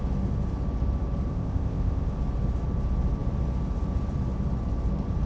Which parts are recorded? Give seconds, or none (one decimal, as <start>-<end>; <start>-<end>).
0.0-1.3; 2.1-5.3